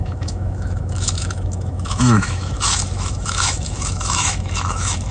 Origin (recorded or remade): remade